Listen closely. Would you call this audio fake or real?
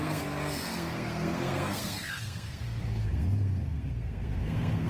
fake